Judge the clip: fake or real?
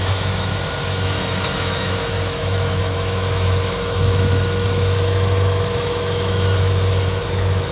fake